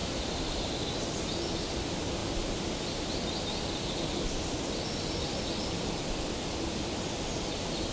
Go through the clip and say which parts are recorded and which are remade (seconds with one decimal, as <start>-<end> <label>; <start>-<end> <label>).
0.0-0.7 remade; 0.7-7.9 recorded